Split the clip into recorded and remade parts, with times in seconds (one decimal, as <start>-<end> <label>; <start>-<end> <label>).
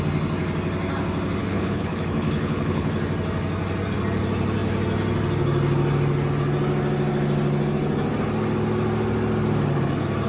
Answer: 0.0-1.4 recorded; 1.4-3.0 remade; 3.0-10.3 recorded